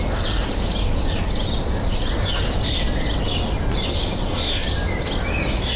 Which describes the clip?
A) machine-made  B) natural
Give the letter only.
B